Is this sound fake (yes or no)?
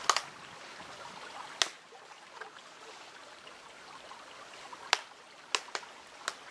no